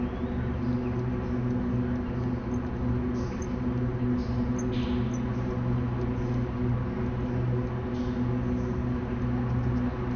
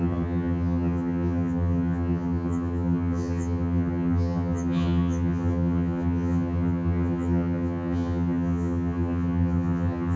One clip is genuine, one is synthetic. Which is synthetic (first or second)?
second